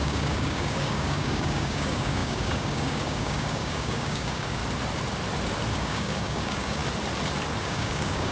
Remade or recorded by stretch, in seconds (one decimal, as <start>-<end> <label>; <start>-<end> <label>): 0.0-4.6 remade; 4.6-5.7 recorded; 5.7-6.8 remade; 6.8-7.6 recorded; 7.6-8.3 remade